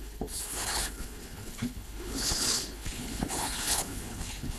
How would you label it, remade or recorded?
remade